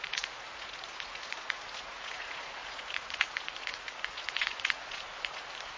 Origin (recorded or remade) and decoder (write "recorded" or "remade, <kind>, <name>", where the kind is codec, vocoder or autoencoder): remade, vocoder, Vocos